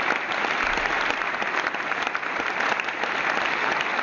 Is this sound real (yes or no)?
yes